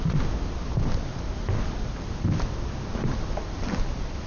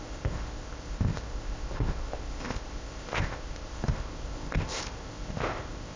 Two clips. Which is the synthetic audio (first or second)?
second